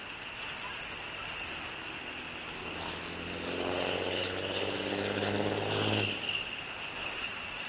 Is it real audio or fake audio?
real